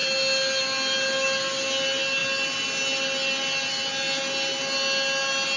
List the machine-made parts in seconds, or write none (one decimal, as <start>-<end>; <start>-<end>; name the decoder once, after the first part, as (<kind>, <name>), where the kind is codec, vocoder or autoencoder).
none